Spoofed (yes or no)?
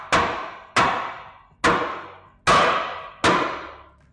no